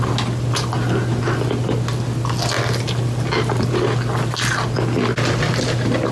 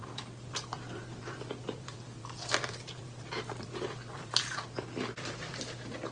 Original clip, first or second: first